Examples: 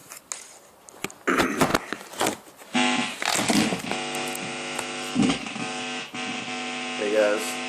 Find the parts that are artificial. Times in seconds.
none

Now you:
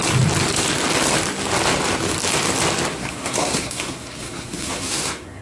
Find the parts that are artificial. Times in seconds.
2.9-5.4 (codec, SNAC)